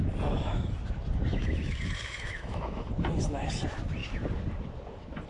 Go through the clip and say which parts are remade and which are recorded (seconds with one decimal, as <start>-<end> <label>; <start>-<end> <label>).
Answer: 0.0-1.3 recorded; 1.3-2.9 remade; 2.9-5.3 recorded